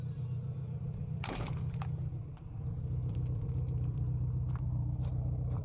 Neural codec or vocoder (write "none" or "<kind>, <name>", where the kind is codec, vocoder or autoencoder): vocoder, BigVGAN v2